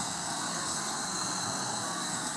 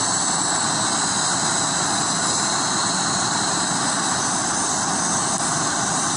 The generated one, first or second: first